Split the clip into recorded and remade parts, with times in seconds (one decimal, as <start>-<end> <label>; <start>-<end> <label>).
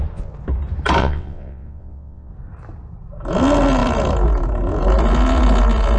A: 0.0-1.0 recorded; 1.0-2.3 remade; 2.3-6.0 recorded